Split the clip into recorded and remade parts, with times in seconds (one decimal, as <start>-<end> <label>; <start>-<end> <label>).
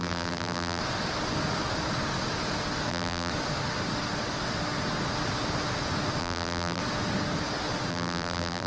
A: 0.0-0.8 remade; 0.8-2.9 recorded; 2.9-3.3 remade; 3.3-6.2 recorded; 6.2-6.8 remade; 6.8-7.9 recorded; 7.9-8.7 remade